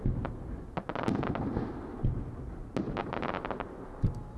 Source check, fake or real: real